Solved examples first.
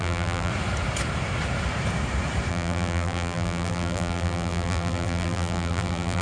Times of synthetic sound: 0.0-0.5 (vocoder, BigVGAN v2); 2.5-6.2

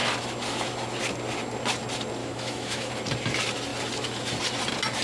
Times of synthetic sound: 2.2-2.9 (autoencoder, DAC-VAE)

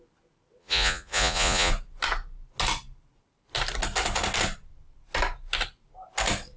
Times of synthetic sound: 0.6-1.7 (vocoder, Vocos)

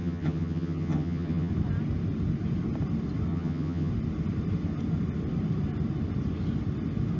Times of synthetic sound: 0.0-1.5 (vocoder, HiFi-GAN); 3.3-3.9

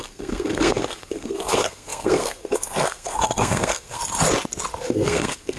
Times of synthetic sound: 0.0-4.0 (codec, SNAC); 4.8-5.6

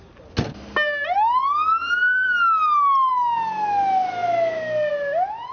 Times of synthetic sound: none